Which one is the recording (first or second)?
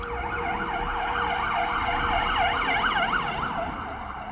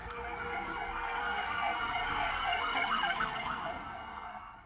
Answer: first